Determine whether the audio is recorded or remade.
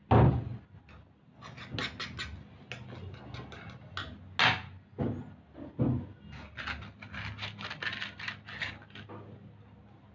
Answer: recorded